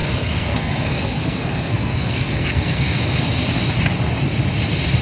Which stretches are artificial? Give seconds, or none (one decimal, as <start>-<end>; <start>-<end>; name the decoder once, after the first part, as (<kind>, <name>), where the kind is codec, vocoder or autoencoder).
0.0-3.0 (codec, SNAC)